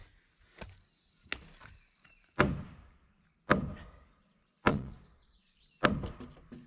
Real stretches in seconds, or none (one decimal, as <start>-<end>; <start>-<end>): 0.0-4.7; 5.6-6.7